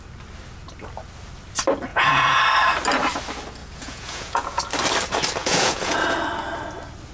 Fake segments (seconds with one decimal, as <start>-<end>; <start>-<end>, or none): 1.9-2.4; 3.6-4.6; 5.4-6.0